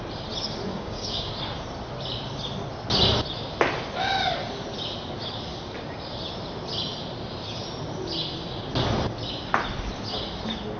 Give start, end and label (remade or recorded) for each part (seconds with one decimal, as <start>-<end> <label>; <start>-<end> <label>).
0.0-0.7 recorded; 0.7-1.3 remade; 1.3-10.8 recorded